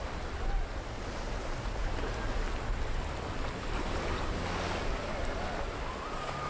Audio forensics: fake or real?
real